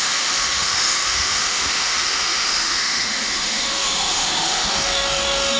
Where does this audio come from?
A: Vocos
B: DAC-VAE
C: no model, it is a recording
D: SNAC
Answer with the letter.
B